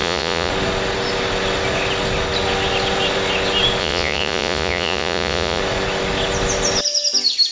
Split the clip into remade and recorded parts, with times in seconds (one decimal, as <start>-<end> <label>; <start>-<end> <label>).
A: 0.0-0.5 remade; 0.5-3.8 recorded; 3.8-5.6 remade; 5.6-7.5 recorded